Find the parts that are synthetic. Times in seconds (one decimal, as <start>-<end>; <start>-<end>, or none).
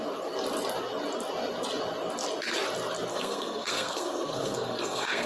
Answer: 3.1-5.3